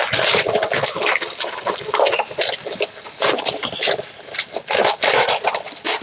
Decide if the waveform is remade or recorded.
recorded